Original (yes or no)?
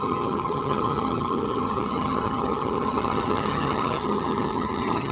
no